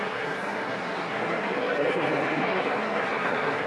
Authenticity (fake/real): fake